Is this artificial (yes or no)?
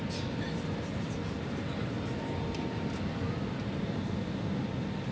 no